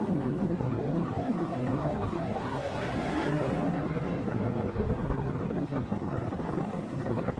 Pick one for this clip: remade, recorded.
remade